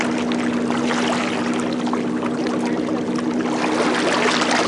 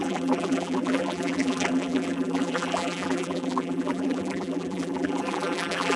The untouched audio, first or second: first